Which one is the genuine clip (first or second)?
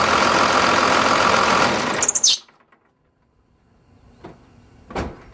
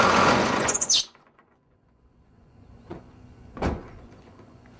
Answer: first